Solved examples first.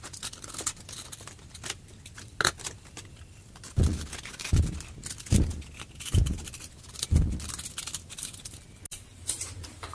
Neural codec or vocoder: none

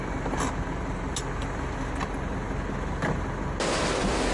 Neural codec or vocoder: none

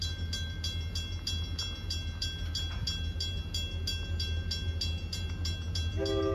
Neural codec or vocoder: none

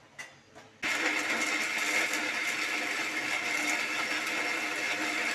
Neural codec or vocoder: none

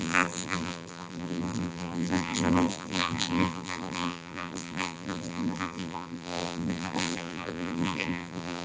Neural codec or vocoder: vocoder, BigVGAN v2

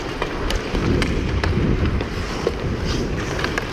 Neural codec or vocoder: vocoder, BigVGAN v2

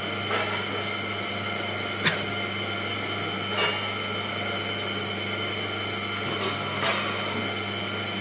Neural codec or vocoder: none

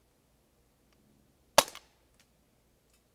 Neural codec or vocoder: none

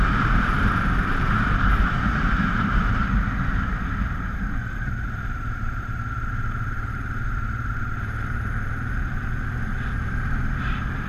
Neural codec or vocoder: vocoder, BigVGAN v2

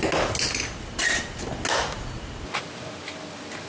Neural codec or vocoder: none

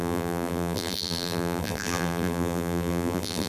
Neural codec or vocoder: vocoder, BigVGAN v2